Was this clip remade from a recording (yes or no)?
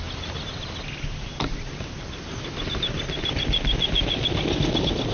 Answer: no